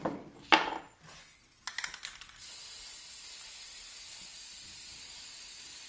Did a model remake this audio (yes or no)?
no